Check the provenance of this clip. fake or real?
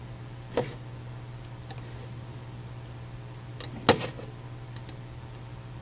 real